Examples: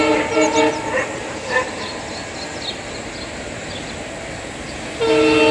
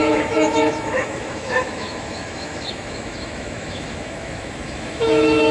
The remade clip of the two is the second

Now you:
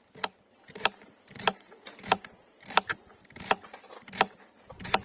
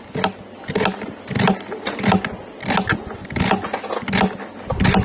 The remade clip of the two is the first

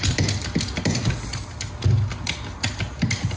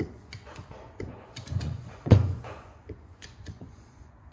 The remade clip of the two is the second